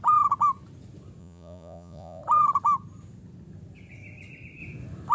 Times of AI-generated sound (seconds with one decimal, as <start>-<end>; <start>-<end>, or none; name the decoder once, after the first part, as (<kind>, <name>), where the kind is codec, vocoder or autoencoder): 1.2-2.2 (vocoder, Vocos)